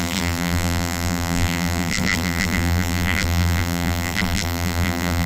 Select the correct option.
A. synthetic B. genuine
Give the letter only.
A